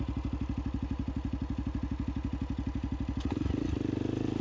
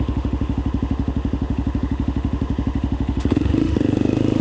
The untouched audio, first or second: first